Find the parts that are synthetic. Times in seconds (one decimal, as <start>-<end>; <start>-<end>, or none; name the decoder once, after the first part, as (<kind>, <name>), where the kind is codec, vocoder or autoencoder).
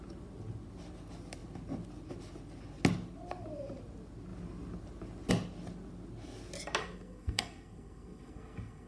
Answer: 6.8-8.9 (codec, SNAC)